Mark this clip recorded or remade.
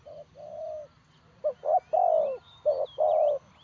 recorded